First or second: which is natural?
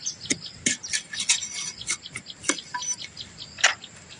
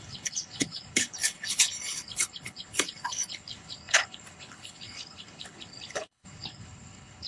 first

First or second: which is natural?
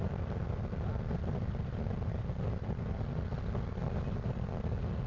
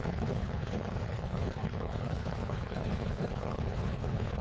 first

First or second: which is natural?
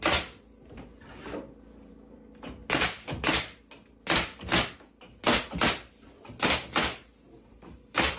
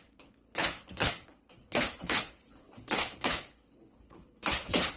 first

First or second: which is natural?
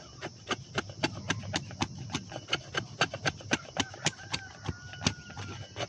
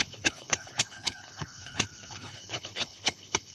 first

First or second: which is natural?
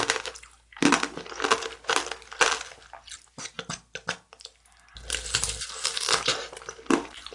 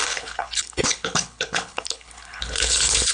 first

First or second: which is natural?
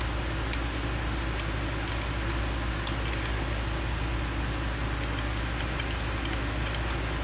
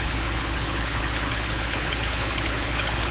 first